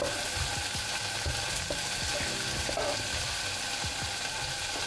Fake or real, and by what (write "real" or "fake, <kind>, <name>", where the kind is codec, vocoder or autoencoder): real